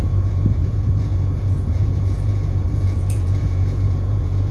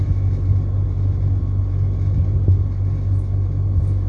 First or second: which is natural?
second